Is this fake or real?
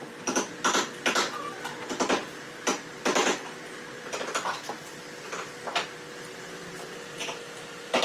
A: real